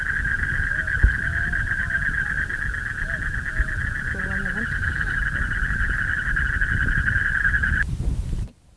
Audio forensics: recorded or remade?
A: recorded